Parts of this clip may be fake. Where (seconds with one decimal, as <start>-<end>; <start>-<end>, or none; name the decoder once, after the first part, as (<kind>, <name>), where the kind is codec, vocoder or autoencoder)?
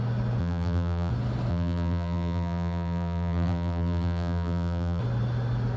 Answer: 0.4-1.1 (vocoder, BigVGAN v2); 1.5-5.0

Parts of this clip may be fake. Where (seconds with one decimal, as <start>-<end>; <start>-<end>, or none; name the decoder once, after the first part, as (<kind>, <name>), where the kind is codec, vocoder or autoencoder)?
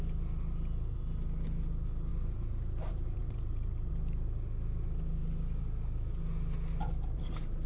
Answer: 2.1-3.9 (vocoder, BigVGAN v2)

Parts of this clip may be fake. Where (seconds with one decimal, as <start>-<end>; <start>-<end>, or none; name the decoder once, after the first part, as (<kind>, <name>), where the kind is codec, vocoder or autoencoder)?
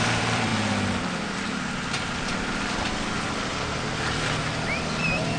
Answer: 0.0-0.5 (vocoder, BigVGAN v2); 1.0-3.5; 5.0-5.4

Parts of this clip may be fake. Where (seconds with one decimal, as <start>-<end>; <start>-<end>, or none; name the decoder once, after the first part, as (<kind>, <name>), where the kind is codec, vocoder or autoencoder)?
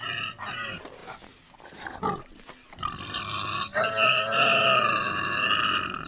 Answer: none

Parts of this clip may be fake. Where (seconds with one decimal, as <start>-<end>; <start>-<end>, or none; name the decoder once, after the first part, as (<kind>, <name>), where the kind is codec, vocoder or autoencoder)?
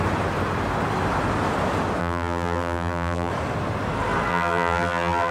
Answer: 2.0-3.3 (vocoder, BigVGAN v2); 4.3-5.3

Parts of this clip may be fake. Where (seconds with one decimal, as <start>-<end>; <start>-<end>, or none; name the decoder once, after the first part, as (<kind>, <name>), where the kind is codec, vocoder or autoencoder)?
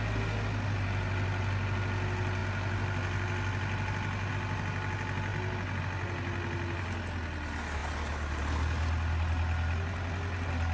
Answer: none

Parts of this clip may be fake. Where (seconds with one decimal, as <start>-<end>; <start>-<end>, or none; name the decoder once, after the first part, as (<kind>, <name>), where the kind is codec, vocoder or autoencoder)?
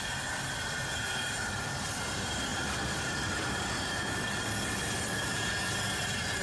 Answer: none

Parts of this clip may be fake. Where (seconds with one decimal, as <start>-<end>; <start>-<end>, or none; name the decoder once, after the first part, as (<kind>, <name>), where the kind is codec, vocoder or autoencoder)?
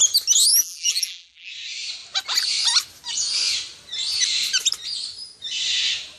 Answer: 0.5-1.5 (vocoder, BigVGAN v2)